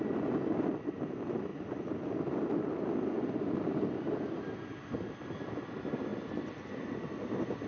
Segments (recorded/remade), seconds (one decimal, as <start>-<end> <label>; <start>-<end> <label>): 0.0-1.5 recorded; 1.5-2.3 remade; 2.3-7.7 recorded